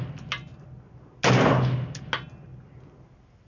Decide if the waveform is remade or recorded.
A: recorded